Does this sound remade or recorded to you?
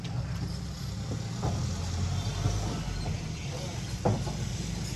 recorded